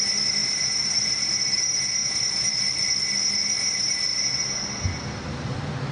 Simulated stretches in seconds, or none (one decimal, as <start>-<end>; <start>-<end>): 0.0-4.1; 5.0-5.9

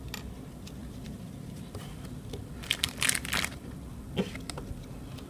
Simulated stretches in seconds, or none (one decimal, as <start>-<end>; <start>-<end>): 0.8-4.0